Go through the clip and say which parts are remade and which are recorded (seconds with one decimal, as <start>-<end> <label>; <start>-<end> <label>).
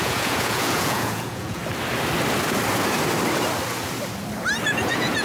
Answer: 0.0-1.6 remade; 1.6-4.7 recorded; 4.7-5.2 remade